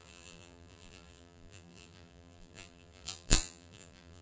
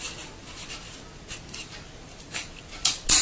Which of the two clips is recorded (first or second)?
second